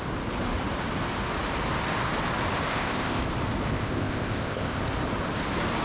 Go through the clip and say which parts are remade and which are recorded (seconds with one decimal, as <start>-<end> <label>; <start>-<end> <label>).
0.0-2.7 recorded; 2.7-3.2 remade; 3.2-3.7 recorded; 3.7-4.8 remade; 4.8-5.8 recorded